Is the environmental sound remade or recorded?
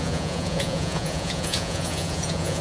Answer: remade